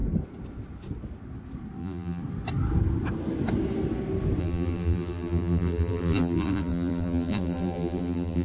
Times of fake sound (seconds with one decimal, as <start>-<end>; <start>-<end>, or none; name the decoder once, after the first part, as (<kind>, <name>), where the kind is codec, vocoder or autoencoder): 1.8-2.2 (vocoder, BigVGAN v2); 4.4-8.4